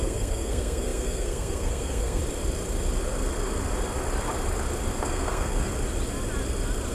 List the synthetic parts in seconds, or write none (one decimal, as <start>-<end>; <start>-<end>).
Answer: 0.0-2.2; 5.0-5.7